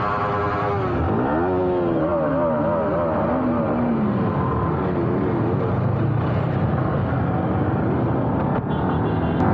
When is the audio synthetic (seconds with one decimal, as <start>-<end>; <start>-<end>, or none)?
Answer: none